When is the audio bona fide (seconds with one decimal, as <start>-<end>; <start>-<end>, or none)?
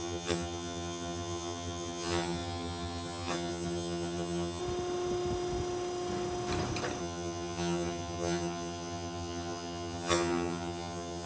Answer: 4.6-7.0